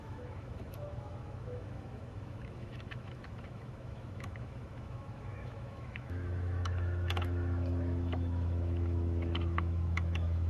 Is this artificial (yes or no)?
yes